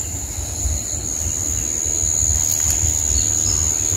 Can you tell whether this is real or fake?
real